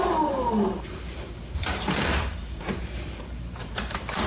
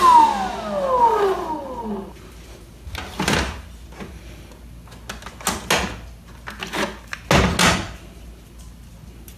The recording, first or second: second